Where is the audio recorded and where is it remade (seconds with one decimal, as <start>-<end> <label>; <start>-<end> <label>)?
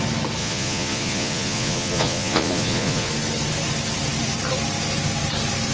0.0-0.4 recorded; 0.4-3.1 remade; 3.1-5.7 recorded